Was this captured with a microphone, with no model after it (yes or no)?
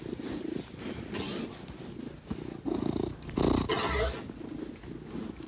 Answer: yes